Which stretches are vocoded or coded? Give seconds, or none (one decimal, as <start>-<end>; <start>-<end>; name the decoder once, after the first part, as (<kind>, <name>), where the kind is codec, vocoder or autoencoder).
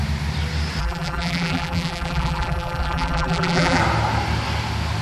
0.8-3.8 (vocoder, BigVGAN v2)